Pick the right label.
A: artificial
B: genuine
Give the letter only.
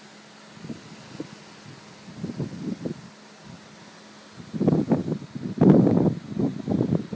B